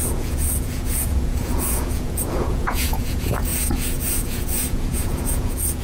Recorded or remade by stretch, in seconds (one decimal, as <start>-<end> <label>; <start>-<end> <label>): 0.0-5.8 remade